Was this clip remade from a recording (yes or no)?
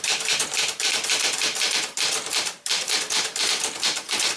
yes